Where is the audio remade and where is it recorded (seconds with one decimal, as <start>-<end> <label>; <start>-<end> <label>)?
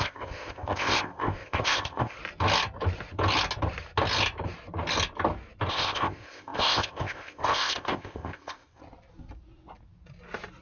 0.0-2.2 remade; 2.2-5.7 recorded; 5.7-8.8 remade; 8.8-10.6 recorded